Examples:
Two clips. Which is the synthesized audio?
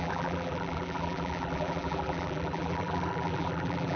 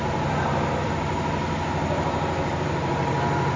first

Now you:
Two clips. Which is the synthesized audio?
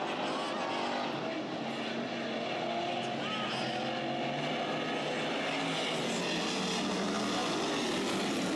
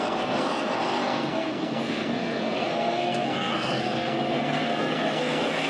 second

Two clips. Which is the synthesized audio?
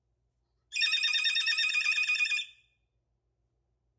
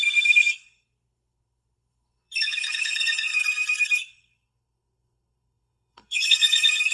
second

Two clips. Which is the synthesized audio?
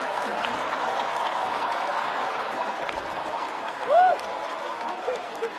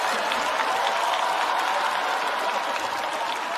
first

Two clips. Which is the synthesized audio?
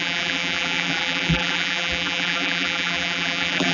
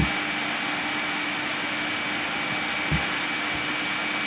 first